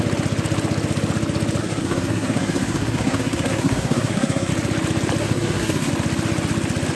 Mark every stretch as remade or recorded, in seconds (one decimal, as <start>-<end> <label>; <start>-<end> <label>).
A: 0.0-1.6 recorded; 1.6-4.5 remade; 4.5-5.2 recorded; 5.2-5.9 remade; 5.9-6.9 recorded

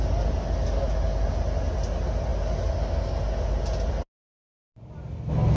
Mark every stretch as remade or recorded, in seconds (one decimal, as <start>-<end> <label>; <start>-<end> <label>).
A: 0.0-5.6 recorded